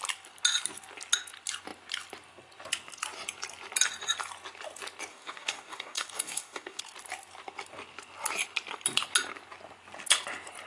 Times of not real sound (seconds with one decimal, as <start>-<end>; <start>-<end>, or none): 5.1-6.8